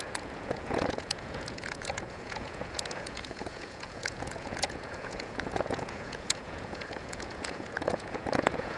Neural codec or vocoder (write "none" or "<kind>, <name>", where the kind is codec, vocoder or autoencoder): vocoder, Vocos